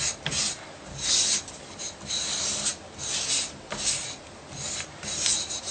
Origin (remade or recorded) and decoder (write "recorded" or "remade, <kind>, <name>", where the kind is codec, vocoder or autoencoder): recorded